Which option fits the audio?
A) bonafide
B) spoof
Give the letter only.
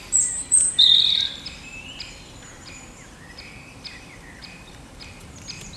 B